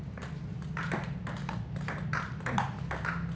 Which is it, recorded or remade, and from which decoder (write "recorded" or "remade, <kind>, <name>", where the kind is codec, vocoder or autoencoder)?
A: recorded